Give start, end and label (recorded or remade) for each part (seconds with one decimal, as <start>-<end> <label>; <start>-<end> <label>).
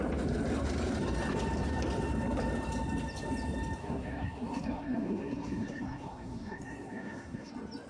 0.0-3.8 recorded; 3.8-7.5 remade; 7.5-7.9 recorded